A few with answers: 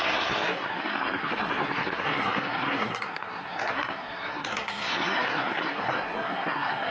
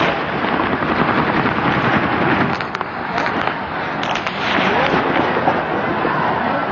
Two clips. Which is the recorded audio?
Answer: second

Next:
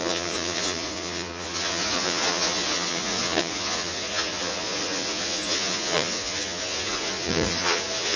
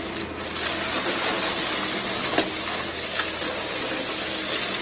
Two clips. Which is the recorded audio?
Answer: second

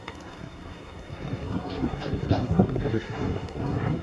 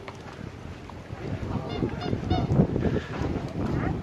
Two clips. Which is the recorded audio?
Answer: second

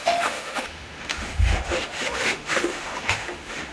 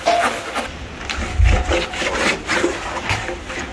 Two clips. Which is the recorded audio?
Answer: second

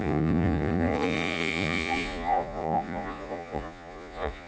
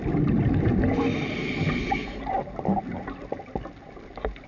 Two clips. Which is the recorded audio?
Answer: second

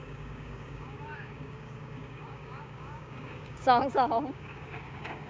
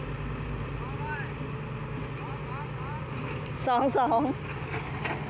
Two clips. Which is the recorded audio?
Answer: second